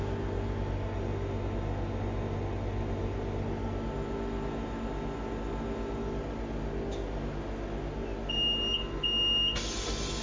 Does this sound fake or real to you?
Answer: real